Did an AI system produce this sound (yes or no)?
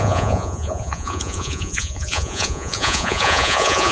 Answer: yes